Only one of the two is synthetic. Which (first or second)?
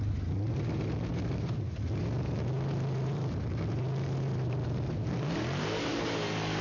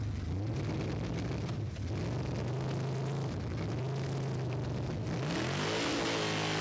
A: first